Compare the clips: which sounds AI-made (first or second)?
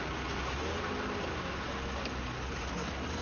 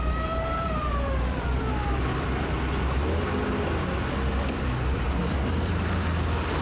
second